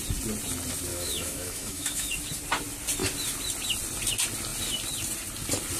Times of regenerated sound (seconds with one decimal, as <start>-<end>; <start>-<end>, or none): 0.9-2.1